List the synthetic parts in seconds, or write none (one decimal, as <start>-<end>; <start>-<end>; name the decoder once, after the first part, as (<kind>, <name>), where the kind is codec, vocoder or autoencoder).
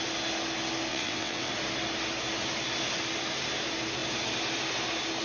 0.9-1.5 (vocoder, WaveNeXt)